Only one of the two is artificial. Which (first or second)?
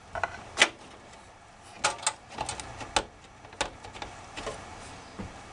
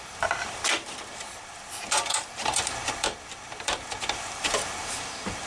second